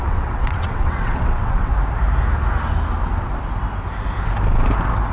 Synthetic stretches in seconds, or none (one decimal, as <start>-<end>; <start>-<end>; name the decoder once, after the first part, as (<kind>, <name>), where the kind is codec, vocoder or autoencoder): 0.0-1.7 (vocoder, WaveNeXt)